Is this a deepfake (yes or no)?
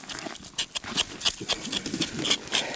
no